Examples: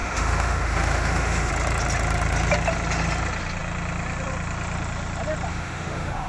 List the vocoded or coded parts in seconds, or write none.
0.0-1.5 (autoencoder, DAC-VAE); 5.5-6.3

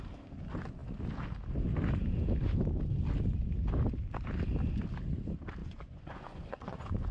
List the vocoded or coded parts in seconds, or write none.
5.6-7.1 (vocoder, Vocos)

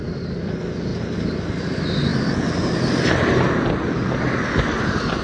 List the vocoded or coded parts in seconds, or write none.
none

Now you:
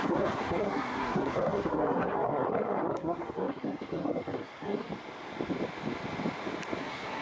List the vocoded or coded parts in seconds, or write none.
0.0-4.9 (codec, SNAC); 6.8-7.2